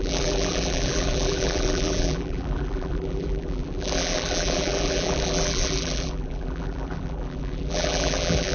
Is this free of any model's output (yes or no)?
no